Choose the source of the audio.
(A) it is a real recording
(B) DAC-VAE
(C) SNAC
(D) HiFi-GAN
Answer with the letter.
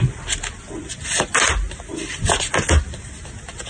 A